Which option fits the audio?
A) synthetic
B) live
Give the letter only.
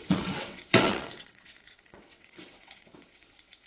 A